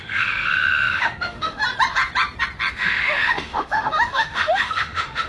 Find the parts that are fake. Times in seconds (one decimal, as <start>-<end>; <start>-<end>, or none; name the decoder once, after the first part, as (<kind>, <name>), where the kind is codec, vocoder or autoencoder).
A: 0.0-1.6 (autoencoder, DAC-VAE); 2.7-5.3